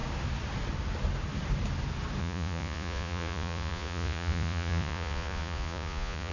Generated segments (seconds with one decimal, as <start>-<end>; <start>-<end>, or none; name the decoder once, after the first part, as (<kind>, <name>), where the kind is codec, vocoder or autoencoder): 2.2-6.3 (vocoder, Vocos)